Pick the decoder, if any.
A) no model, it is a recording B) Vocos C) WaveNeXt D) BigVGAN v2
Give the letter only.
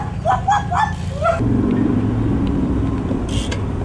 A